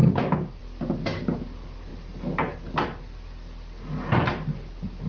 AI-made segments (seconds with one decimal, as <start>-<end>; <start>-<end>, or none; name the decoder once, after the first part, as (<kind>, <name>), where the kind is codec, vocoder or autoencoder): 0.0-0.6 (codec, DAC)